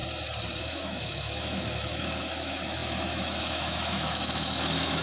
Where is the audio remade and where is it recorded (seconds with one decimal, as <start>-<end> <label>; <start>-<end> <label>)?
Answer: 0.0-0.6 recorded; 0.6-5.0 remade

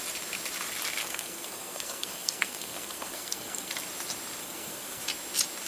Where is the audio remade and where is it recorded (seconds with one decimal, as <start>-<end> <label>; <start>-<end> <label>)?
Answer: 0.0-1.0 recorded; 1.0-3.7 remade; 3.7-4.4 recorded; 4.4-5.0 remade; 5.0-5.7 recorded

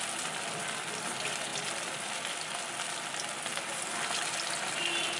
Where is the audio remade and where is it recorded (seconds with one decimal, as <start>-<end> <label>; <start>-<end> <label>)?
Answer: 0.0-5.2 recorded

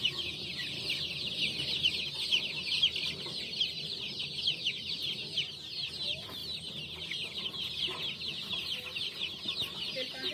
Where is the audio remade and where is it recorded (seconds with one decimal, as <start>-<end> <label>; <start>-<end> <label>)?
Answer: 0.0-10.3 recorded

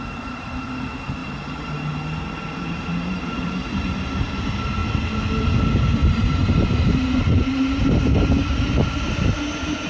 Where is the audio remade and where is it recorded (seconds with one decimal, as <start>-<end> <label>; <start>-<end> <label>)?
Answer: 0.0-1.2 remade; 1.2-2.4 recorded; 2.4-4.8 remade; 4.8-5.6 recorded; 5.6-6.4 remade; 6.4-6.9 recorded; 6.9-9.9 remade

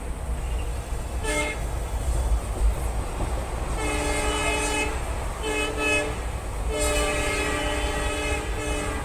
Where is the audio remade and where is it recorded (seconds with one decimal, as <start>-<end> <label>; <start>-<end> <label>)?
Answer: 0.0-0.7 recorded; 0.7-2.4 remade; 2.4-9.0 recorded